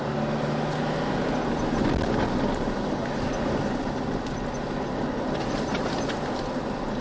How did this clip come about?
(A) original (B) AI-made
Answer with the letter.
A